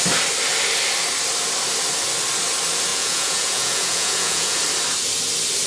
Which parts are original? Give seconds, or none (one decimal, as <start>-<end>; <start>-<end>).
0.0-2.9; 4.6-5.7